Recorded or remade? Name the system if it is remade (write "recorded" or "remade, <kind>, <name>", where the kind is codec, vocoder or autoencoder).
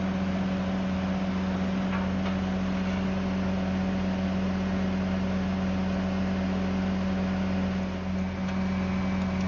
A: recorded